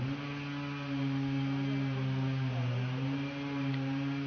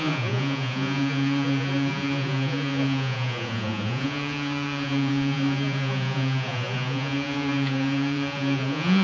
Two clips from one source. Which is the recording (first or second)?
first